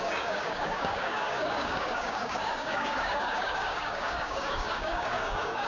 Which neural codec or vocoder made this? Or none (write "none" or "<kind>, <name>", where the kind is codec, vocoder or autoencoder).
codec, DAC